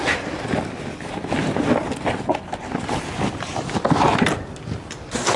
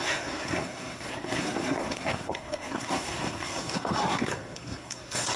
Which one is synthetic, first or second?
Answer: second